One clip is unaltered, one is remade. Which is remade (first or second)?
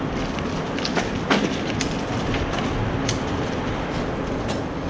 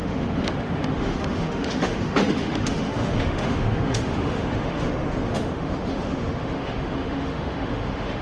second